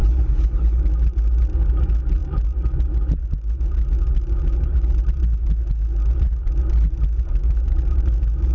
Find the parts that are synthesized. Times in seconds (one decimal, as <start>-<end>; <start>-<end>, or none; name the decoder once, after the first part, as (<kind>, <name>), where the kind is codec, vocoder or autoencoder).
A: 0.0-0.8 (codec, HILCodec)